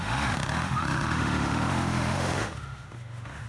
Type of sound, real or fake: fake